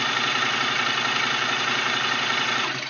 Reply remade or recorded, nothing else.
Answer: remade